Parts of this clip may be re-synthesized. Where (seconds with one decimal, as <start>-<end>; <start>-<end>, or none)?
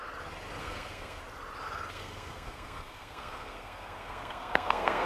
0.6-1.2; 1.9-5.1